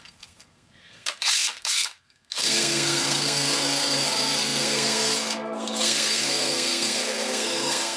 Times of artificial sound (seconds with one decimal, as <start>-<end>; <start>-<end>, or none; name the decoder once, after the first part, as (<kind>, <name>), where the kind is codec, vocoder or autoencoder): 0.0-8.0 (codec, SNAC)